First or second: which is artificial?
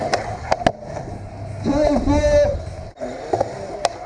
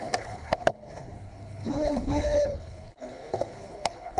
second